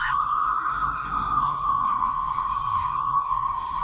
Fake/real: fake